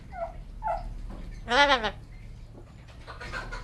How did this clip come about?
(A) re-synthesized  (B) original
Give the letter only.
B